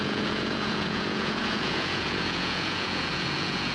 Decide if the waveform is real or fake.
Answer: fake